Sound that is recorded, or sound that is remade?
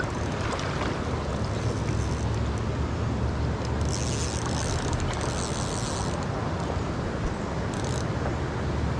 recorded